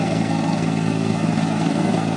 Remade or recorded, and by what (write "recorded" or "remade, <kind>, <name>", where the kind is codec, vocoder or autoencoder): remade, codec, SNAC